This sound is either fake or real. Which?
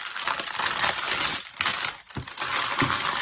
real